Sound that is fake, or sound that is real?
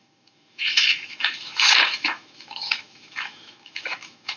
fake